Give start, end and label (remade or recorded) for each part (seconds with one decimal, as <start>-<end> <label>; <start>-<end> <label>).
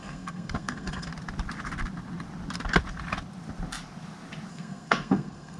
0.0-1.1 remade; 1.1-4.5 recorded; 4.5-5.6 remade